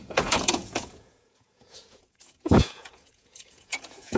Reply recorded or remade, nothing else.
remade